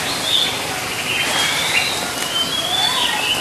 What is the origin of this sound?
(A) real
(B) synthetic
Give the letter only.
A